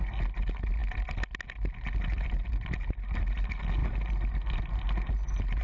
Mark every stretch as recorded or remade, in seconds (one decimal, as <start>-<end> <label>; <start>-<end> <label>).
0.0-5.6 recorded